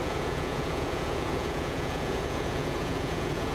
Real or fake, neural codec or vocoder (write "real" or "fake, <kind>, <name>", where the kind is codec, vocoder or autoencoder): fake, vocoder, Vocos